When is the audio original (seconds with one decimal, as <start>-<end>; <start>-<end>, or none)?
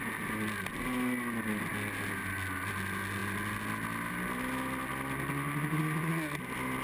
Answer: 0.0-6.8